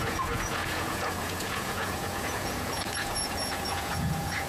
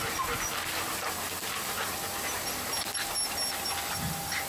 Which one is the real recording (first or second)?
second